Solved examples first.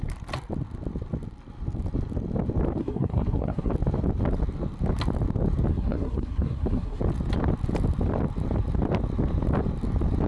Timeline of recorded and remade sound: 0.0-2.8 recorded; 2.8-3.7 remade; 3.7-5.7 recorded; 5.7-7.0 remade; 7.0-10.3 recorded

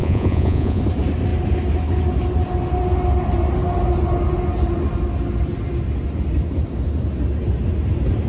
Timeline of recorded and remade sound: 0.0-0.8 remade; 0.8-8.3 recorded

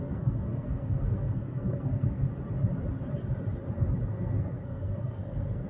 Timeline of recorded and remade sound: 0.0-2.3 remade; 2.3-4.0 recorded; 4.0-5.7 remade

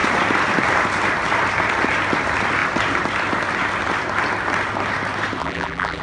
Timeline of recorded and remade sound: 0.0-5.4 recorded; 5.4-6.0 remade